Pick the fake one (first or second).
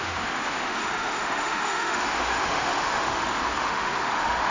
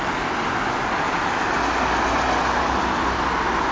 first